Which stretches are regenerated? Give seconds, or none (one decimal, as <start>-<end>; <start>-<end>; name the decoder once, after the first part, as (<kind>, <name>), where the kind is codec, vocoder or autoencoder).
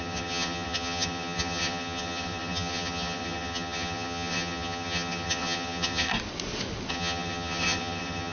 0.0-6.1 (vocoder, HiFi-GAN); 6.9-8.3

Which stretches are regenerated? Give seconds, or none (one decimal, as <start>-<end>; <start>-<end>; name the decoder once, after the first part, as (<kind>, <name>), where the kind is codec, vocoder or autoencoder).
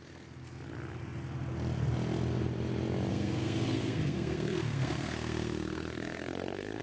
3.1-6.8 (codec, SNAC)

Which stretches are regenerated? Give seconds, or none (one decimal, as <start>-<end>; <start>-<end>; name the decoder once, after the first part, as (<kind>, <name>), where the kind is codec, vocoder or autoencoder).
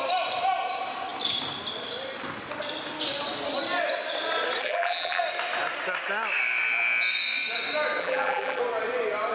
4.6-5.2 (vocoder, BigVGAN v2); 8.0-8.6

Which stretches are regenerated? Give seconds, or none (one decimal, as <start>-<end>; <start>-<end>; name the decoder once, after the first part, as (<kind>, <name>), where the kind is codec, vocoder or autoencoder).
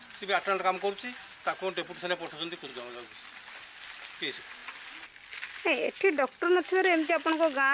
none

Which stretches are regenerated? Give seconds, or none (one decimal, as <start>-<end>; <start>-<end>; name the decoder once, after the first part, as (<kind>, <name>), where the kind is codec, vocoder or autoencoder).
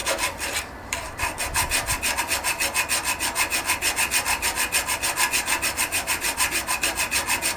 0.0-2.2 (vocoder, BigVGAN v2)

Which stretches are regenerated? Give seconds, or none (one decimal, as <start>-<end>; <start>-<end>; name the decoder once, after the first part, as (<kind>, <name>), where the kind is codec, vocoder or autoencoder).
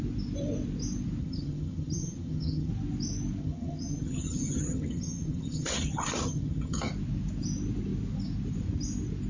1.2-2.7 (vocoder, HiFi-GAN); 3.4-6.9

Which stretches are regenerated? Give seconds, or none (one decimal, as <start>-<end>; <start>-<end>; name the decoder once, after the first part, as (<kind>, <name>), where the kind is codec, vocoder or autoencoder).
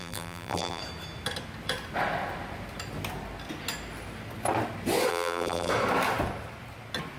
0.0-0.8 (vocoder, BigVGAN v2); 5.1-5.7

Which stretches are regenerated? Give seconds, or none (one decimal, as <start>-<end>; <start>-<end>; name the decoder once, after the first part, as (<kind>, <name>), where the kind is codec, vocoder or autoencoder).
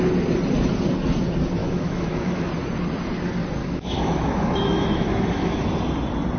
1.6-2.5 (autoencoder, DAC-VAE); 3.6-5.6